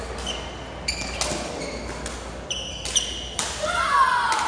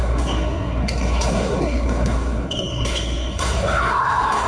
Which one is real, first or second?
first